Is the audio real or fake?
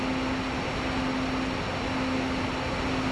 real